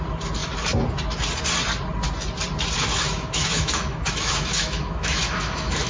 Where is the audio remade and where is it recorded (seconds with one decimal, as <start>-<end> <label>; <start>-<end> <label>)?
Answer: 0.0-2.9 recorded; 2.9-5.9 remade